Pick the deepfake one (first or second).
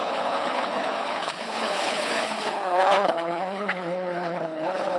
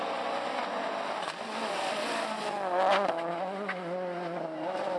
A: first